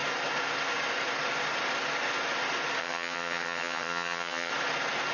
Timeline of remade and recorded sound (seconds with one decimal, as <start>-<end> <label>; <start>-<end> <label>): 0.0-2.8 recorded; 2.8-4.5 remade; 4.5-5.1 recorded